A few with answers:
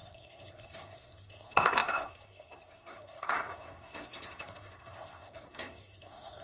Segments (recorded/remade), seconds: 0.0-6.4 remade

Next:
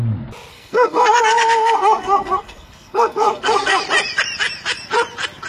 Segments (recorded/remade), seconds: 0.0-0.5 recorded; 0.5-3.8 remade; 3.8-5.5 recorded